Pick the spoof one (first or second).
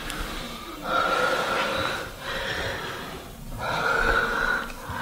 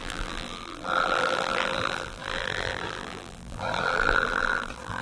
second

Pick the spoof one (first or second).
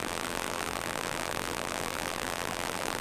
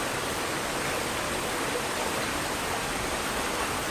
first